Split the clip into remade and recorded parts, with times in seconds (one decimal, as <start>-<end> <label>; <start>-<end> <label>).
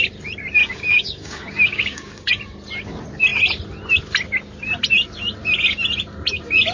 0.0-0.6 recorded; 0.6-2.3 remade; 2.3-6.7 recorded